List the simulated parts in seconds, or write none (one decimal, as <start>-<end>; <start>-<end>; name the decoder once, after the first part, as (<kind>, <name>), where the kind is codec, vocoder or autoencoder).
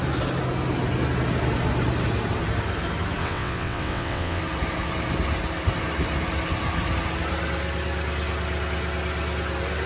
3.2-4.4 (vocoder, WaveNeXt)